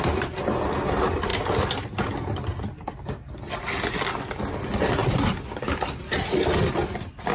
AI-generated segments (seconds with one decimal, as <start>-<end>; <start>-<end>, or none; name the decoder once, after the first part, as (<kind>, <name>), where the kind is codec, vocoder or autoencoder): none